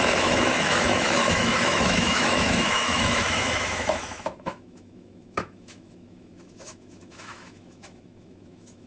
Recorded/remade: remade